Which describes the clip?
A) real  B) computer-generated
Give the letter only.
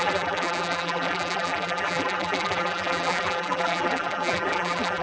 B